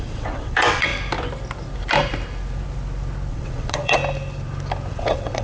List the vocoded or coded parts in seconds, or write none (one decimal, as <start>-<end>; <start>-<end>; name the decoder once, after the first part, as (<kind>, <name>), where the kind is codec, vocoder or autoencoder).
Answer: 0.0-0.9 (vocoder, WaveNeXt); 3.3-4.0; 4.9-5.4